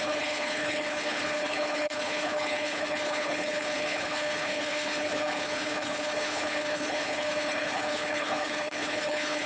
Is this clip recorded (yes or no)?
no